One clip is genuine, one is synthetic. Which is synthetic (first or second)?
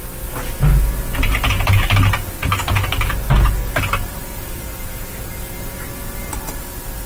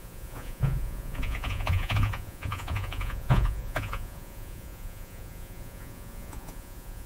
second